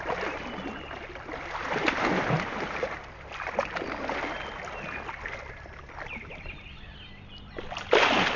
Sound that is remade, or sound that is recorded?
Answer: recorded